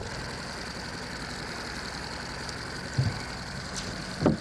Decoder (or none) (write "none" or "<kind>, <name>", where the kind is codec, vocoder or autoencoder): none